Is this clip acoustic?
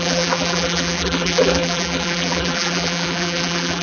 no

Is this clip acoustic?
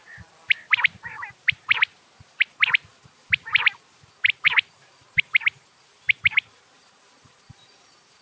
yes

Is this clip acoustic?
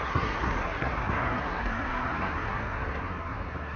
no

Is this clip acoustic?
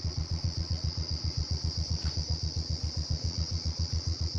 no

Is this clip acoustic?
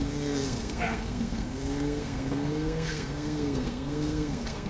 no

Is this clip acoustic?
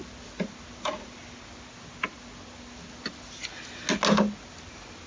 yes